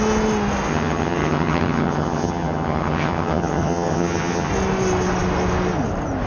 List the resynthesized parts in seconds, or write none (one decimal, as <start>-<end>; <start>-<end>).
0.7-4.5